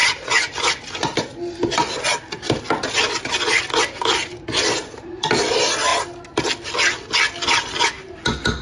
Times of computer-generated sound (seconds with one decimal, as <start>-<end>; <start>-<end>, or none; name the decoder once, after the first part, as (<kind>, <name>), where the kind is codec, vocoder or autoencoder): none